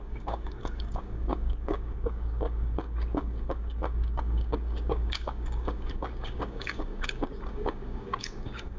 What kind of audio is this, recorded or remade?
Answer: remade